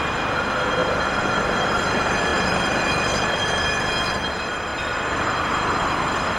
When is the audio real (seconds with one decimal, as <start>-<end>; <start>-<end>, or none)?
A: none